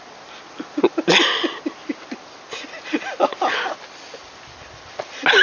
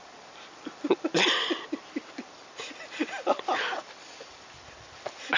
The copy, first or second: second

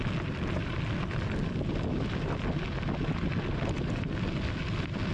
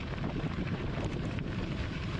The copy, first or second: second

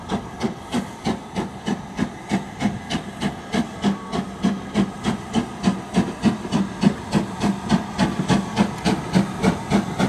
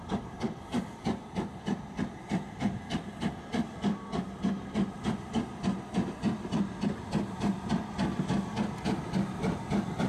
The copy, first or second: second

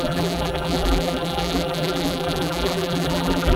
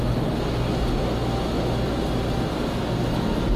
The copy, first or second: first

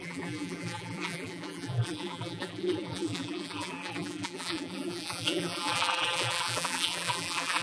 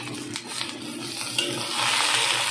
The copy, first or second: first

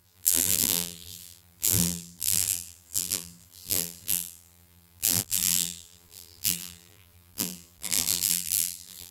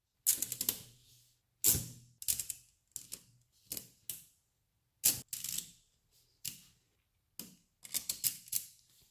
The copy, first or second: first